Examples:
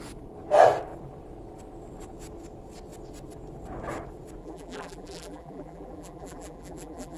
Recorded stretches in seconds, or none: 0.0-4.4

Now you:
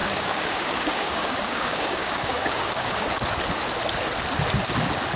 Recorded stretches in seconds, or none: 3.1-5.2

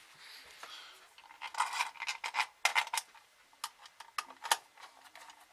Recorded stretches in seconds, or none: 0.0-5.5

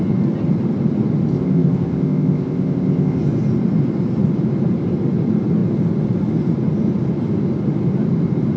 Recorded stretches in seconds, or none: 0.0-1.3; 3.2-8.6

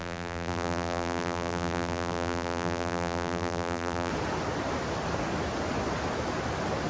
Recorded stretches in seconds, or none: 4.1-6.9